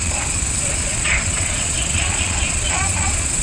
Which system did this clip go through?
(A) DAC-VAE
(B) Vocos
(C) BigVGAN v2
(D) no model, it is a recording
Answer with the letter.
B